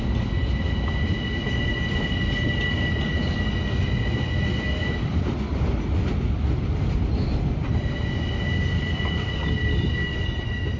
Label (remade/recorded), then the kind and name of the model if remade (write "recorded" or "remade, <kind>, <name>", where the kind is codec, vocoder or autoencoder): recorded